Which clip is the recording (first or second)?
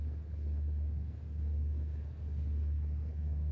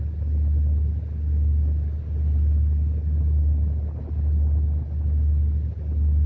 second